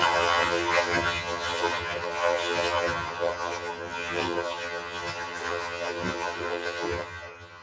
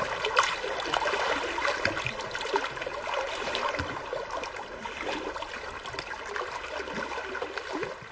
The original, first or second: second